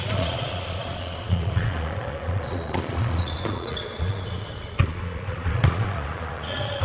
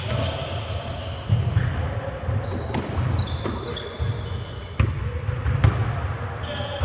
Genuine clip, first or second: second